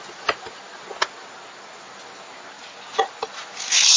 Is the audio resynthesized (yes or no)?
no